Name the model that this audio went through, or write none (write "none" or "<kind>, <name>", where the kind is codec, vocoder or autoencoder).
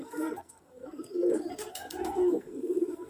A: codec, SNAC